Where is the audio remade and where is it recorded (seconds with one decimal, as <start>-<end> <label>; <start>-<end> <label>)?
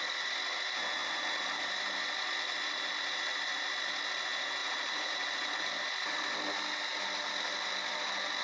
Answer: 0.0-4.6 recorded; 4.6-5.1 remade; 5.1-8.4 recorded